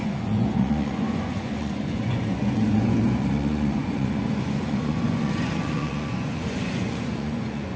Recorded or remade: remade